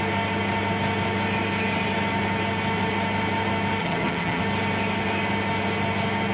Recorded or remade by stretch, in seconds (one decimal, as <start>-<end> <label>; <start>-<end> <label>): 0.0-3.8 recorded; 3.8-4.4 remade; 4.4-6.3 recorded